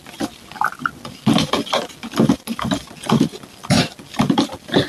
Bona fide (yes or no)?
no